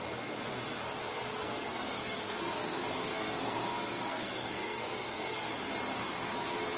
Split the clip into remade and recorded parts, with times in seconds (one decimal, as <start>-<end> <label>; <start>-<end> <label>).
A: 0.0-1.4 recorded; 1.4-5.5 remade; 5.5-6.8 recorded